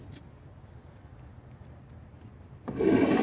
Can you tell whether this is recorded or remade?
recorded